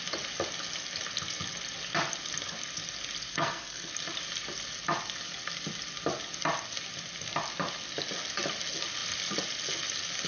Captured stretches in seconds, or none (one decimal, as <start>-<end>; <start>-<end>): 0.0-3.3; 3.9-10.3